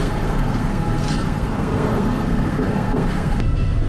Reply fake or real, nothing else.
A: fake